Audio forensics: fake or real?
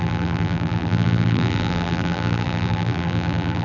fake